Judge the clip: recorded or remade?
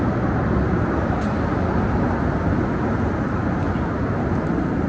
recorded